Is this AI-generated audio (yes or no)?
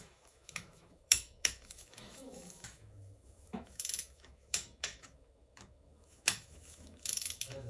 yes